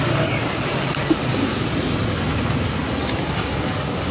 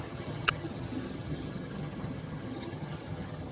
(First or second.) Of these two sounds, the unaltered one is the first